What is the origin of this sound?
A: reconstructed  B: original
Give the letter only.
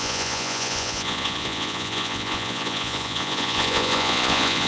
A